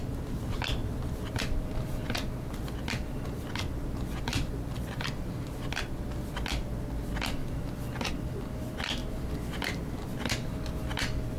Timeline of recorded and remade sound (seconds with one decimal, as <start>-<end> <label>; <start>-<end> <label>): 0.0-0.8 recorded; 0.8-3.2 remade; 3.2-4.3 recorded; 4.3-5.1 remade; 5.1-7.4 recorded; 7.4-8.1 remade; 8.1-11.4 recorded